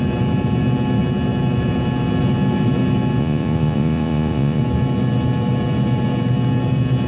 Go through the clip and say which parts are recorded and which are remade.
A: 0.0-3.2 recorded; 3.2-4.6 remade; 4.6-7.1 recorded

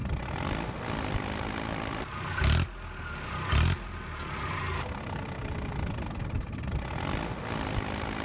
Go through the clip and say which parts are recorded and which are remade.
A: 0.0-8.2 recorded

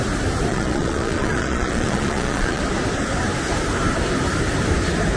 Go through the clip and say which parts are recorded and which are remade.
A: 0.0-0.5 recorded; 0.5-2.6 remade; 2.6-5.2 recorded